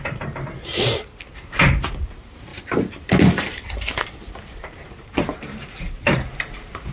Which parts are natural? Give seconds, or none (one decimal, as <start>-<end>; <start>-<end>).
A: 2.5-4.4